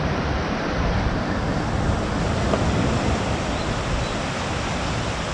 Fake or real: real